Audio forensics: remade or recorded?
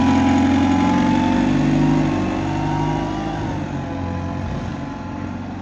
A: recorded